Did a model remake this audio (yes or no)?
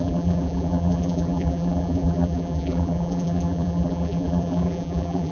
yes